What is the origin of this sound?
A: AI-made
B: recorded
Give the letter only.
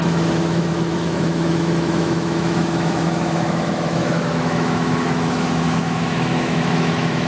A